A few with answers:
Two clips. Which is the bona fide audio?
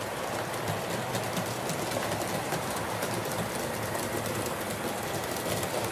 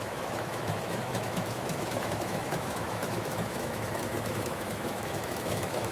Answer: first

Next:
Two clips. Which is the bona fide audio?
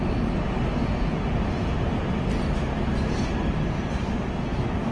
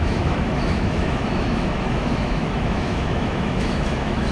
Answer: first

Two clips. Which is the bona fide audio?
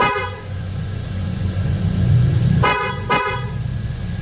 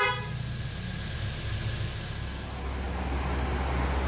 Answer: second